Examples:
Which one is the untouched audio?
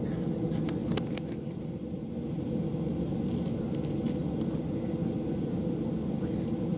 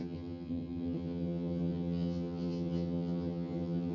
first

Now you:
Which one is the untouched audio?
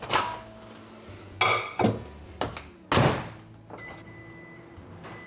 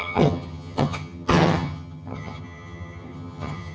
first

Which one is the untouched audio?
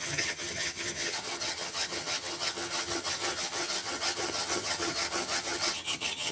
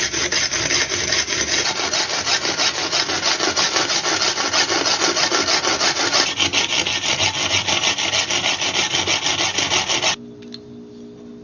second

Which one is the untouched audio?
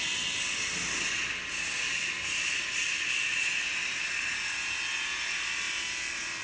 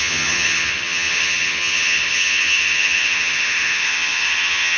first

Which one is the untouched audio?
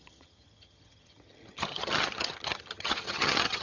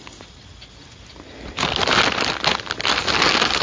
second